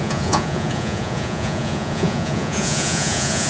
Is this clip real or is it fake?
fake